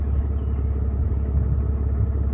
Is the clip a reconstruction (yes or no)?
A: no